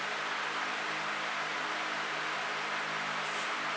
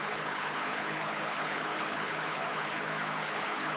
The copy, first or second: second